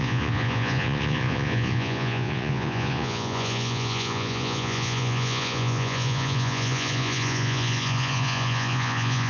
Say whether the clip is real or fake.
fake